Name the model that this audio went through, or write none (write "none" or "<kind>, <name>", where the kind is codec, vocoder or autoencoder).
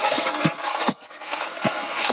codec, SNAC